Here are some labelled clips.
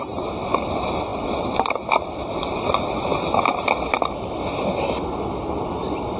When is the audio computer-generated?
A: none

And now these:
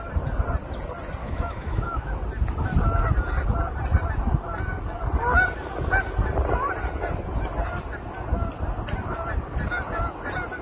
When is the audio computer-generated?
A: 1.2-2.1 (autoencoder, DAC-VAE)

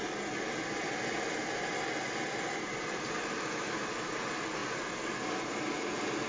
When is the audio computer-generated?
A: none

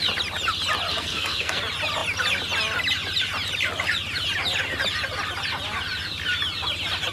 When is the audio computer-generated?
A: 0.9-1.6 (codec, SNAC)

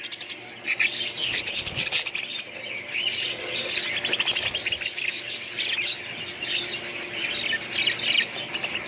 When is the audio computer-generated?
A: 1.2-1.8 (codec, HILCodec)

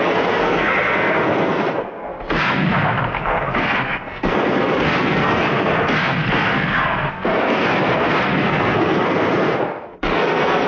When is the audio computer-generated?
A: 0.0-10.7 (codec, SNAC)

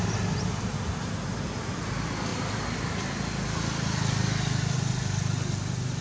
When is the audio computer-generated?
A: none

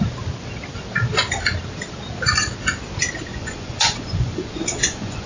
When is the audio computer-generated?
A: 3.3-5.3 (vocoder, Vocos)